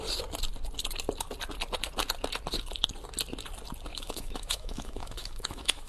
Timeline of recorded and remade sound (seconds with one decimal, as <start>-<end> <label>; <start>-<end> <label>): 0.0-3.9 recorded; 3.9-5.9 remade

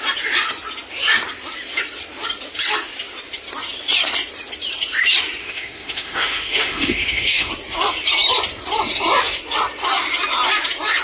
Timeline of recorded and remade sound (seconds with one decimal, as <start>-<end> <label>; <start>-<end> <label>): 0.0-5.4 recorded; 5.4-7.5 remade; 7.5-11.0 recorded

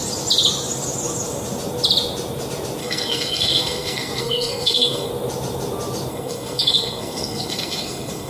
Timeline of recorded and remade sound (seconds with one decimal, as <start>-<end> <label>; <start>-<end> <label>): 0.0-2.8 recorded; 2.8-5.1 remade; 5.1-6.1 recorded; 6.1-8.3 remade

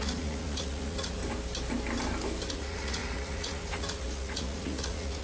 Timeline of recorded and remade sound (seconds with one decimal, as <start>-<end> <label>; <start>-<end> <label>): 0.0-1.2 remade; 1.2-2.5 recorded; 2.5-5.2 remade